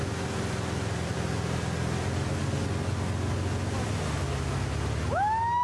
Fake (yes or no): no